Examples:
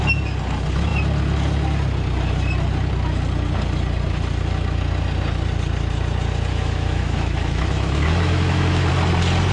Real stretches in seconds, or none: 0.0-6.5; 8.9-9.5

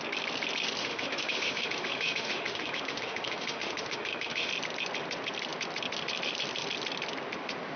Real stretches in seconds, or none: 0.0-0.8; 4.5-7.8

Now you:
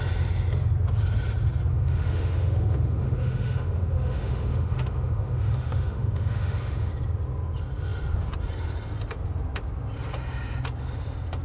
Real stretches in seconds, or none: 0.0-1.7; 6.9-11.4